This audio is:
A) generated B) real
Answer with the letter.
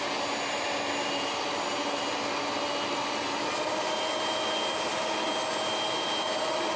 B